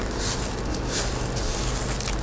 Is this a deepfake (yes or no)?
no